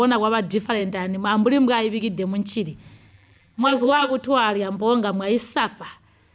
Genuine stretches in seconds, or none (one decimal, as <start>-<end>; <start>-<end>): 0.0-3.1; 4.1-6.3